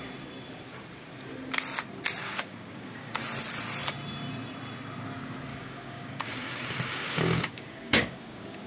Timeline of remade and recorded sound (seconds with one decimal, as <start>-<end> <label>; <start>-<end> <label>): 0.0-2.2 recorded; 2.2-3.2 remade; 3.2-5.5 recorded; 5.5-8.7 remade